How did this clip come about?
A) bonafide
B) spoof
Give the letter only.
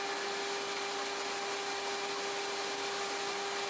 A